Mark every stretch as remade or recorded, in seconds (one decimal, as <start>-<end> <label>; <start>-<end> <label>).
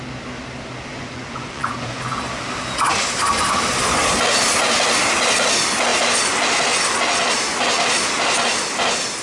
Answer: 0.0-0.9 recorded; 0.9-2.2 remade; 2.2-9.2 recorded